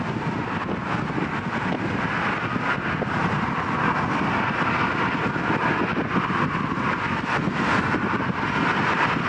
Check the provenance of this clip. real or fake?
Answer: real